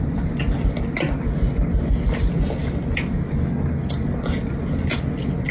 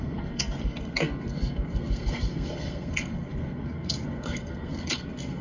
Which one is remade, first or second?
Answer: second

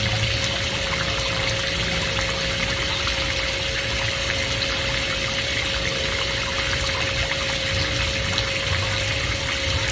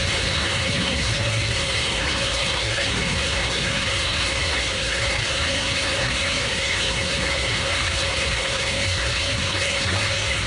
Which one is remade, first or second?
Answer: second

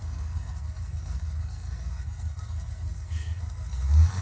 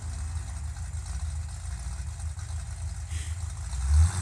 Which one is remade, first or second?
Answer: first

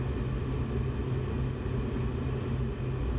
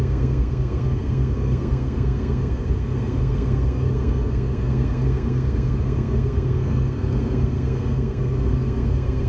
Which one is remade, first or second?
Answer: second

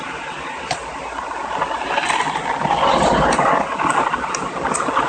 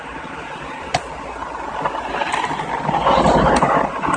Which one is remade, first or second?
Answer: second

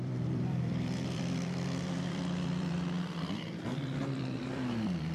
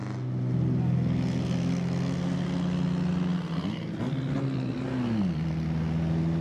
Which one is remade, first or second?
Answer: first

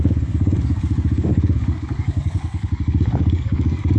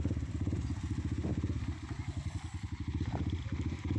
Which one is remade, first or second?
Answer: first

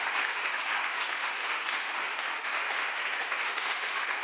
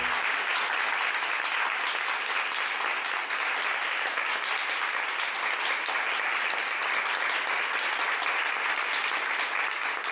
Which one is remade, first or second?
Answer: first